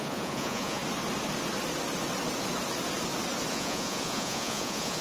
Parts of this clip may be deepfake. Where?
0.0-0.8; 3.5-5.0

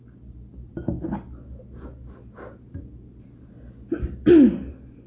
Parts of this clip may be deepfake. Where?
none

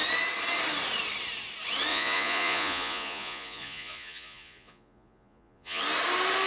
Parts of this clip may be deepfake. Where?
1.9-5.8

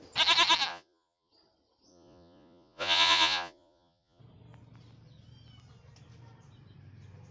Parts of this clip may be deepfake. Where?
0.7-1.3; 1.9-4.2

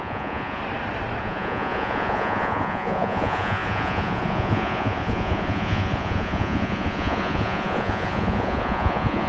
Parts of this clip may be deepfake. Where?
0.0-0.6; 1.2-9.3